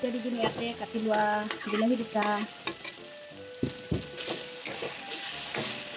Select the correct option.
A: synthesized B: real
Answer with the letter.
B